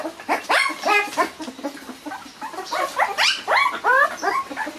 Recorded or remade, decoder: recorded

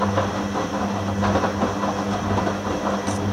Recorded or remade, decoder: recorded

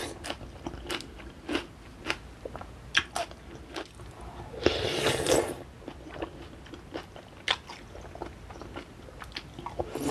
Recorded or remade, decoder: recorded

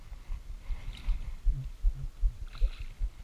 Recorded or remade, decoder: recorded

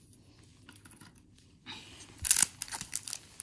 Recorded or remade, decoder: recorded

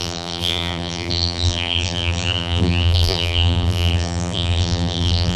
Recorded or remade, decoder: remade, vocoder, BigVGAN v2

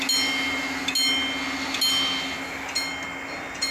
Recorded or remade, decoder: recorded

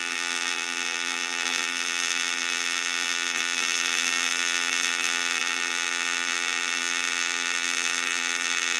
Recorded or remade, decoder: remade, vocoder, BigVGAN v2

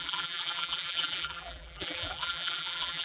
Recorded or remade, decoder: remade, vocoder, BigVGAN v2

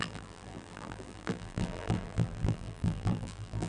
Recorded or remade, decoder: remade, vocoder, BigVGAN v2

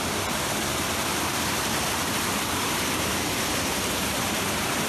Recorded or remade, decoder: remade, vocoder, BigVGAN v2